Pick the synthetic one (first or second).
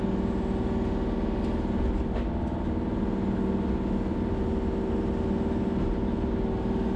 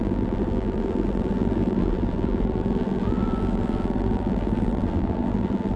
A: second